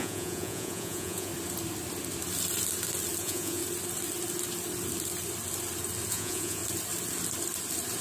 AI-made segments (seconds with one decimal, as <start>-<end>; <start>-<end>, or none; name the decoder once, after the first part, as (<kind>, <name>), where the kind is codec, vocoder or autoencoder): 0.0-1.3 (vocoder, Vocos); 3.2-3.6; 6.1-6.6